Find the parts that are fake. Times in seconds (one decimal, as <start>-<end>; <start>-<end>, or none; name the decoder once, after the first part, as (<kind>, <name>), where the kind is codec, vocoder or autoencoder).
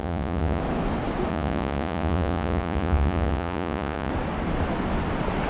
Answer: 0.0-0.6 (vocoder, Vocos); 1.3-4.1